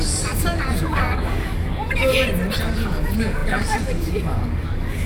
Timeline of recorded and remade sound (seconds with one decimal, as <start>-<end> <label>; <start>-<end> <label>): 0.0-2.1 remade; 2.1-2.6 recorded; 2.6-5.1 remade